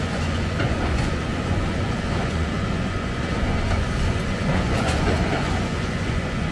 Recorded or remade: remade